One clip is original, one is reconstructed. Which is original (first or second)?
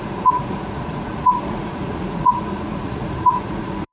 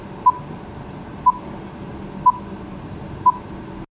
second